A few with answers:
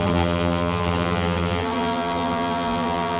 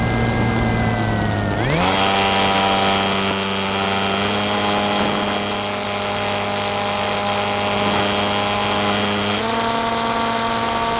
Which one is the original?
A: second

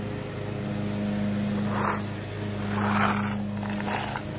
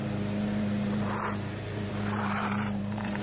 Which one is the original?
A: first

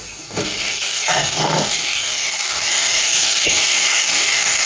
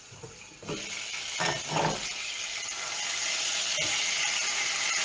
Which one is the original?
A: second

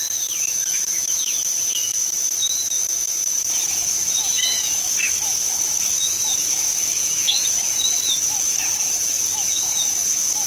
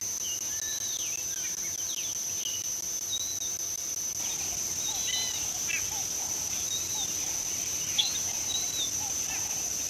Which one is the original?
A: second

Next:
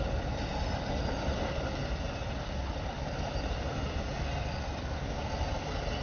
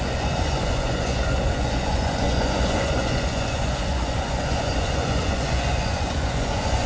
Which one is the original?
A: first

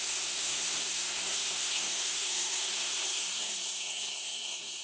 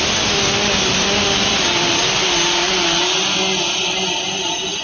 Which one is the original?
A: second